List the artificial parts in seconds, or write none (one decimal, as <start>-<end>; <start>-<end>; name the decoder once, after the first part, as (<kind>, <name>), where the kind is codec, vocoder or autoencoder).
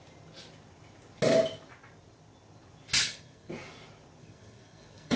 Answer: 3.0-3.5 (codec, SNAC); 4.2-5.2